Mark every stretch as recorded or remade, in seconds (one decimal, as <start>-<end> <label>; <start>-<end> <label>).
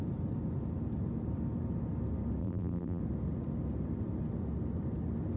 0.0-2.4 recorded; 2.4-3.0 remade; 3.0-5.4 recorded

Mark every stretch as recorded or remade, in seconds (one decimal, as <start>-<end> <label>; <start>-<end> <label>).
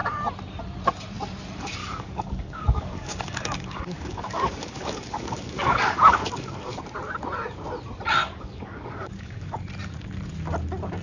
0.0-1.8 recorded; 1.8-6.8 remade; 6.8-8.2 recorded; 8.2-9.6 remade; 9.6-11.0 recorded